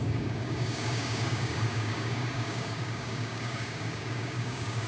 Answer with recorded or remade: remade